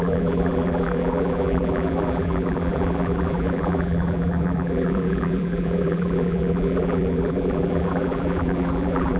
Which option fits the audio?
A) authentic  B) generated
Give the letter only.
B